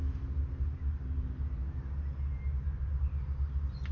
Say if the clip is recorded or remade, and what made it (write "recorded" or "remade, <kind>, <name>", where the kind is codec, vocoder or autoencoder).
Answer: recorded